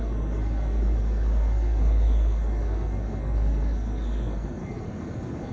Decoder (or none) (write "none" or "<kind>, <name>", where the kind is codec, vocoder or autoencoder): codec, SNAC